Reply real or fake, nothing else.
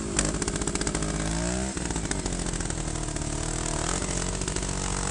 real